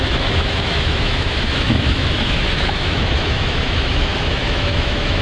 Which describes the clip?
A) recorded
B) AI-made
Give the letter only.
B